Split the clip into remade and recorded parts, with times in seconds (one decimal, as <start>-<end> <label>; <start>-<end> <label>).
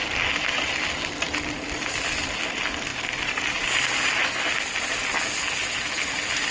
0.0-6.5 recorded